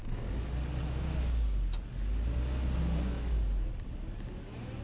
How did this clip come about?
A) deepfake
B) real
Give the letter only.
B